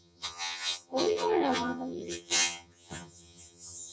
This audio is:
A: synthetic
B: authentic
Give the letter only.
A